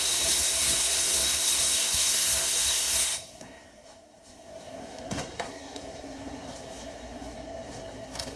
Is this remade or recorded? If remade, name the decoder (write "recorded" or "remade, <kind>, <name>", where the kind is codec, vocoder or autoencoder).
remade, codec, SNAC